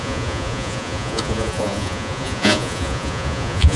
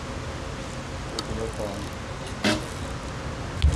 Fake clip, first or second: first